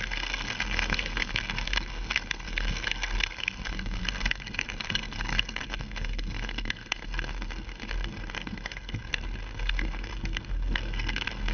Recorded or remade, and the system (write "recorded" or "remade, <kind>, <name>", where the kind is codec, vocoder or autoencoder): remade, codec, SNAC